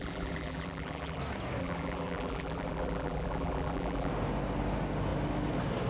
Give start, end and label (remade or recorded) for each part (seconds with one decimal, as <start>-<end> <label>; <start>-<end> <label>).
0.0-1.2 remade; 1.2-1.6 recorded; 1.6-4.1 remade; 4.1-5.9 recorded